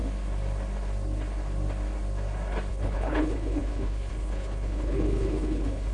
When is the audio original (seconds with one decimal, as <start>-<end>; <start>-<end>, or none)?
0.0-2.7